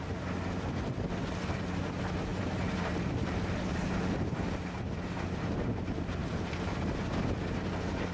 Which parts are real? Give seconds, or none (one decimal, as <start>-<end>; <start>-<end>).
0.0-2.3; 4.9-6.2; 6.9-8.1